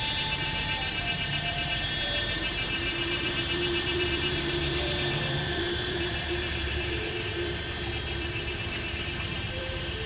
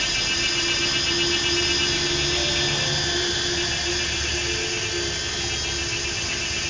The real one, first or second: second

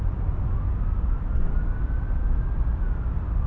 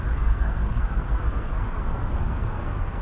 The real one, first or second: first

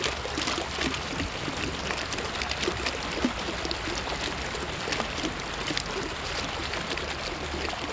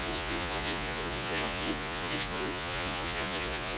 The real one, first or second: first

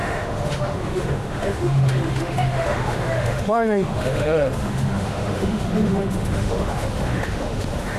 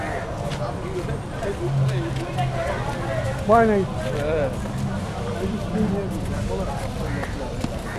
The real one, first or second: second